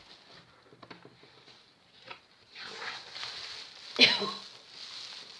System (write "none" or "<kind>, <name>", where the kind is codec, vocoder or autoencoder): none